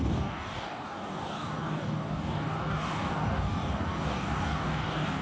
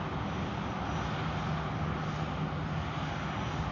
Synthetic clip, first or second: first